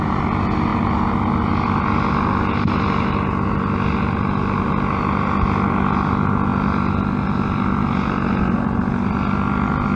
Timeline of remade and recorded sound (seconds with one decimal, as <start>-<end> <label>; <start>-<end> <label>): 0.0-10.0 recorded